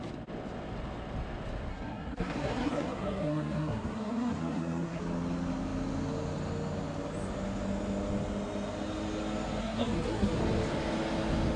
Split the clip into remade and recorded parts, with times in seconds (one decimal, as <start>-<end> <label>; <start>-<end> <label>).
0.0-1.7 recorded; 1.7-5.0 remade; 5.0-9.6 recorded; 9.6-10.4 remade; 10.4-11.6 recorded